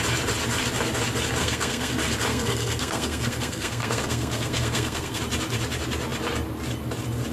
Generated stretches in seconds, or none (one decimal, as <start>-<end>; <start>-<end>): 1.4-1.9; 2.3-5.2